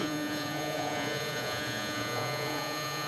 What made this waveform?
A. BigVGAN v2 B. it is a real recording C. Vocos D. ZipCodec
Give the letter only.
C